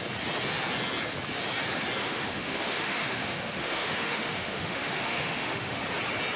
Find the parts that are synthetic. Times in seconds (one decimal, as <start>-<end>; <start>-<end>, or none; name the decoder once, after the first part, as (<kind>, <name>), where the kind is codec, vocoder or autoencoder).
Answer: 2.0-5.8 (autoencoder, DAC-VAE)